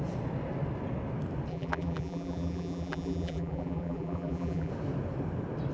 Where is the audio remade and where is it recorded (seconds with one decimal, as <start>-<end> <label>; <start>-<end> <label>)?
0.0-1.5 recorded; 1.5-4.7 remade; 4.7-5.7 recorded